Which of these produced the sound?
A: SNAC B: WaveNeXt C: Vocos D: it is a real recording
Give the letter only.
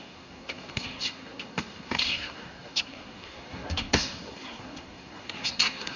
A